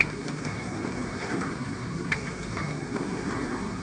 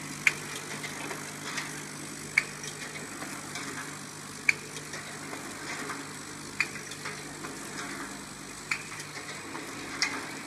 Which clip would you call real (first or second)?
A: second